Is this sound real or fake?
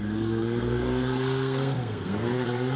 fake